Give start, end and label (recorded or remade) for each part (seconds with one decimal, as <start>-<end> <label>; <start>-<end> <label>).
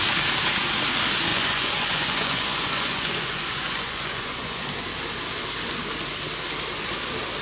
0.0-1.3 recorded; 1.3-4.6 remade; 4.6-7.4 recorded